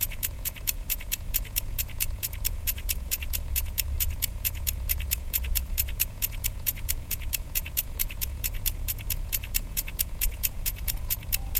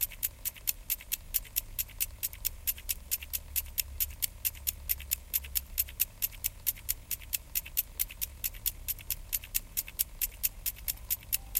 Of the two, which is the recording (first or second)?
second